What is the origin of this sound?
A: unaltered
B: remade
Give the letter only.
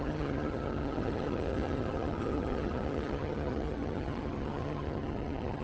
B